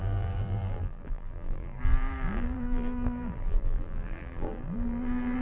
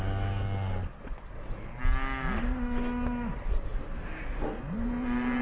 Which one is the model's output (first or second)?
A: first